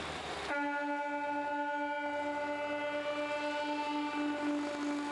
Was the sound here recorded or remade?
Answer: recorded